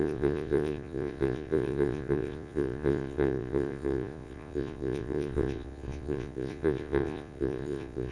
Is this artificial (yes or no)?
yes